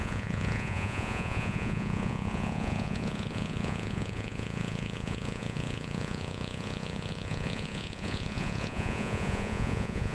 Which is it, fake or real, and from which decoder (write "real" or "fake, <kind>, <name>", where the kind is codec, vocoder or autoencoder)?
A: fake, vocoder, Vocos